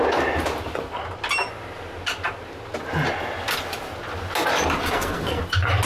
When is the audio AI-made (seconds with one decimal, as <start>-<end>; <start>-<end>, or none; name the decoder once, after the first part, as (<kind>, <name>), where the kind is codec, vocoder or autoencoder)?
4.8-5.4 (codec, SNAC)